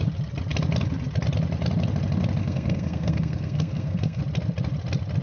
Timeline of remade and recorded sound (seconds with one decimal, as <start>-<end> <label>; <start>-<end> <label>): 0.0-2.4 recorded; 2.4-4.2 remade; 4.2-5.2 recorded